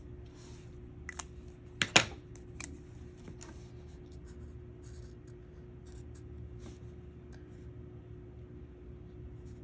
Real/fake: real